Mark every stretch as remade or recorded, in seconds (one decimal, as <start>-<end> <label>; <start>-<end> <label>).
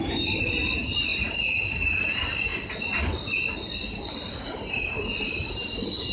0.0-2.5 remade; 2.5-3.7 recorded; 3.7-6.1 remade